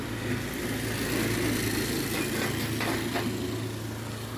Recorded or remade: recorded